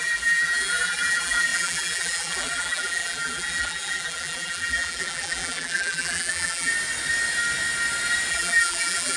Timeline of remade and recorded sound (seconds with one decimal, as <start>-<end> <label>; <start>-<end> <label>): 0.0-6.7 remade; 6.7-8.3 recorded; 8.3-9.2 remade